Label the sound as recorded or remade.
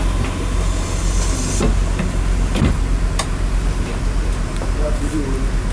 recorded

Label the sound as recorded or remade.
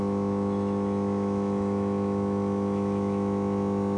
remade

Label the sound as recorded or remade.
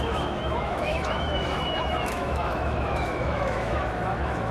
remade